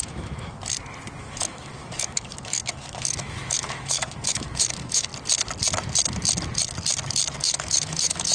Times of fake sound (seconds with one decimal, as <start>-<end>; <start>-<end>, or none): 0.0-0.6; 1.2-5.1; 7.4-8.3